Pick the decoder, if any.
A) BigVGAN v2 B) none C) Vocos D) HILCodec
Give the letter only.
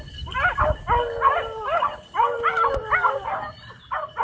B